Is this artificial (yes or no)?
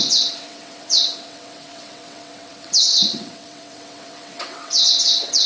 yes